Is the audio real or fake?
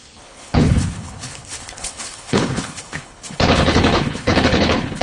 fake